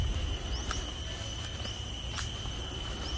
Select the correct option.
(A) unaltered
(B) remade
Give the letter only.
A